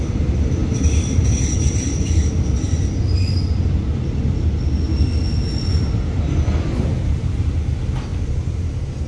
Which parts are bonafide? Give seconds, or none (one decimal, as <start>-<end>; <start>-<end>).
0.0-5.7; 7.5-9.1